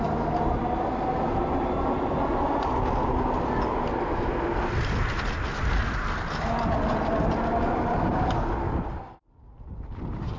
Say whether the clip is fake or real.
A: real